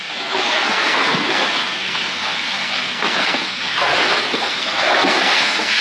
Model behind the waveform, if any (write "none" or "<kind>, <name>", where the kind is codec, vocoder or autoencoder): codec, SNAC